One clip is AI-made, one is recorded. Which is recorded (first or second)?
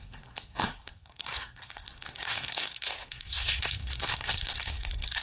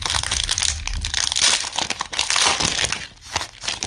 second